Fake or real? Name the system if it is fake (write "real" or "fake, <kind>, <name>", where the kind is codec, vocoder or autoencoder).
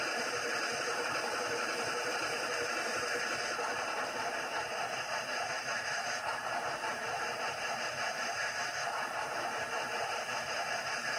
fake, vocoder, BigVGAN v2